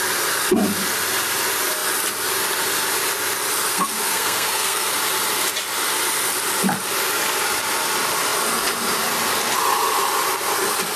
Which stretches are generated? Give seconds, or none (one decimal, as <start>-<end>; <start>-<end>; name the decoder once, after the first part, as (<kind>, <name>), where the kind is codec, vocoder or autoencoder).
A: 3.7-4.9 (codec, SNAC)